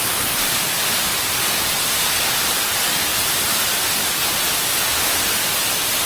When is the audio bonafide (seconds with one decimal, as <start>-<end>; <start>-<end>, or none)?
0.0-3.1; 3.8-6.1